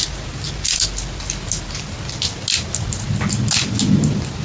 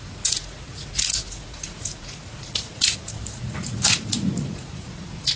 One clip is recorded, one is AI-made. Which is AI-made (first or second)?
second